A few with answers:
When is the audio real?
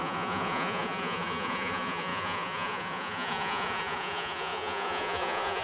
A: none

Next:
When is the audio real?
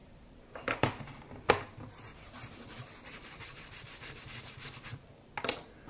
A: 1.5-2.1; 5.1-5.9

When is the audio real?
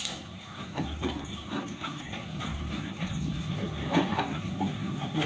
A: none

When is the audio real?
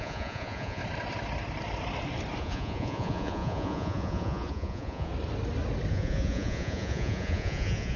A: 0.8-2.4; 5.1-5.9